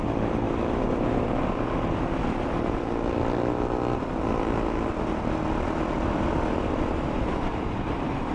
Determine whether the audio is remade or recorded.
recorded